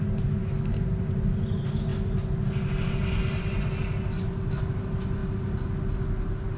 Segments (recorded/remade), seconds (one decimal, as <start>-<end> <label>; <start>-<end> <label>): 0.0-6.6 recorded